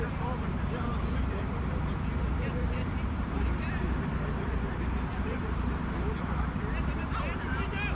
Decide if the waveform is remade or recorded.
remade